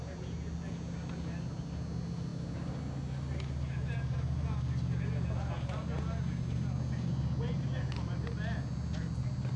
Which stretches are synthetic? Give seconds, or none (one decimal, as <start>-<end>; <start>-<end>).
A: none